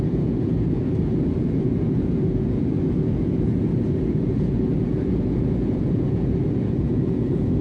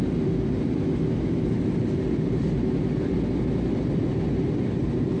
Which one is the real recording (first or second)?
second